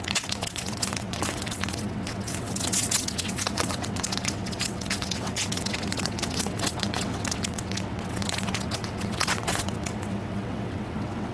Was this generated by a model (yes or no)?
yes